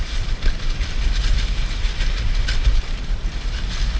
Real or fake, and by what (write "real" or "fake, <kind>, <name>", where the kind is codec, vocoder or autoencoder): real